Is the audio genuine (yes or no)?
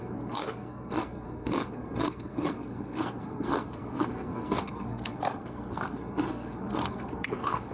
no